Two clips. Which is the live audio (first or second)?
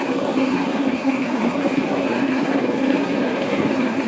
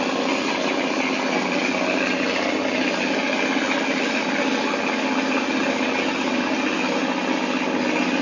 second